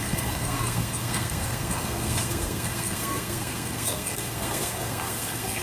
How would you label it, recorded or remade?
remade